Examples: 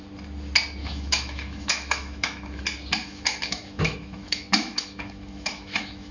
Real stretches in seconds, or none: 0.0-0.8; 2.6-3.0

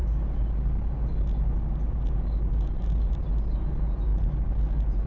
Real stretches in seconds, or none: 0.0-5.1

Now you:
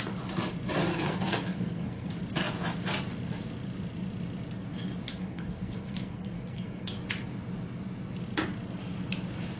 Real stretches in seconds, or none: 0.0-0.9; 2.1-5.1; 6.9-9.6

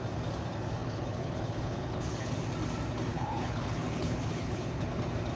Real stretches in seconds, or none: 0.0-0.8; 2.3-3.1; 5.0-5.4